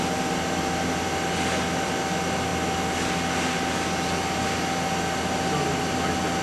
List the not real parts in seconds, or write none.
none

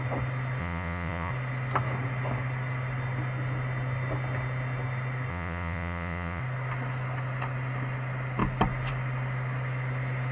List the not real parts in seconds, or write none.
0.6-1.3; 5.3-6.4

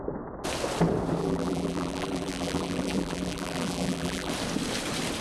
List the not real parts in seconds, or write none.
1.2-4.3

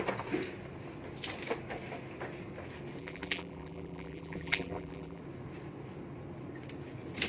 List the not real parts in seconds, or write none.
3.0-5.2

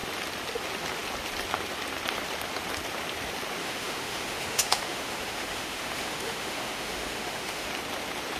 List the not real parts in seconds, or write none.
3.6-7.7

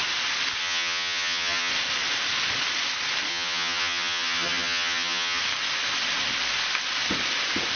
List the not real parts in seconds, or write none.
0.6-1.7; 3.3-5.4